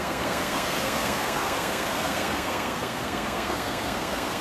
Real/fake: fake